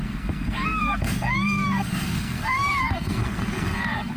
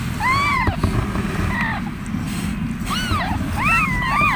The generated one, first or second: first